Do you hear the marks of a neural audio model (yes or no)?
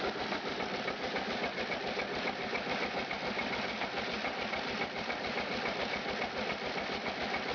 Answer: no